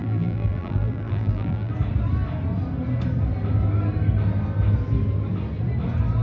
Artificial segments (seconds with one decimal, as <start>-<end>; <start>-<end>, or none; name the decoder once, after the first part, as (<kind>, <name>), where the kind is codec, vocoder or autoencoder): 0.0-1.7 (vocoder, BigVGAN v2)